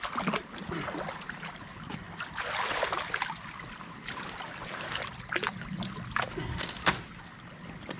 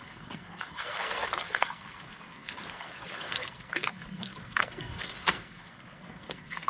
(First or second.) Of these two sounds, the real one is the first